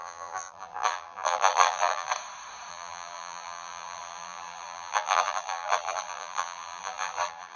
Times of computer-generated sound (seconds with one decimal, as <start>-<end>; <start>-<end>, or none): 0.0-2.1; 2.7-7.6